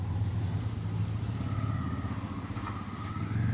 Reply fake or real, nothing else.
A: real